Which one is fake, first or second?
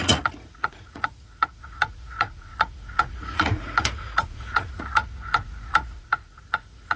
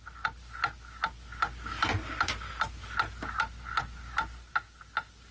first